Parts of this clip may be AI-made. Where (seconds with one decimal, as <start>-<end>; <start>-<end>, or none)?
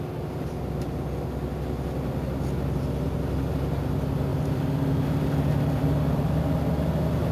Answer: 4.3-6.4